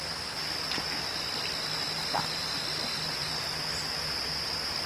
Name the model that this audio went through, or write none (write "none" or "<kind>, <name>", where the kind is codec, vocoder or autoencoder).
none